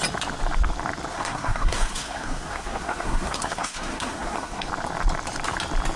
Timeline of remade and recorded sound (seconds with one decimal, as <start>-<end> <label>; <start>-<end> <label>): 0.0-1.1 recorded; 1.1-4.7 remade; 4.7-6.0 recorded